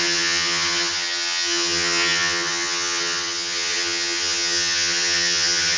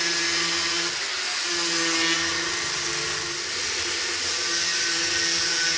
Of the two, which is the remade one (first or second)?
first